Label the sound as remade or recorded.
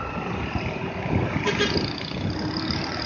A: recorded